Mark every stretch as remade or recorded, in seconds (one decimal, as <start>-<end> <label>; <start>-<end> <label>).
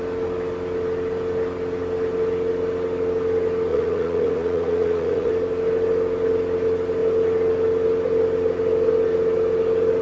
0.0-3.7 recorded; 3.7-5.3 remade; 5.3-10.0 recorded